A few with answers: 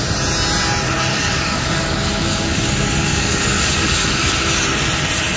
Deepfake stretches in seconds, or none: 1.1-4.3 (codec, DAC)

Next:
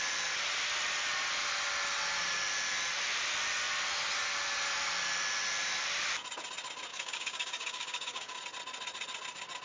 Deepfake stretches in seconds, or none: 6.9-8.4 (codec, DAC)

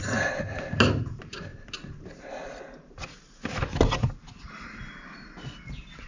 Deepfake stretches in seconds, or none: none

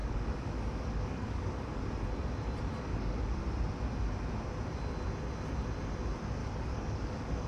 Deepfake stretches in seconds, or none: 0.0-1.6 (codec, DAC); 2.9-3.4; 6.4-7.5